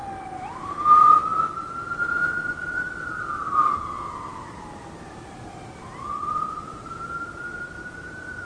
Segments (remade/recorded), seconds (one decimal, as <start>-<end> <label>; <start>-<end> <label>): 0.0-0.6 recorded; 0.6-1.3 remade; 1.3-4.3 recorded; 4.3-5.9 remade; 5.9-7.1 recorded; 7.1-8.4 remade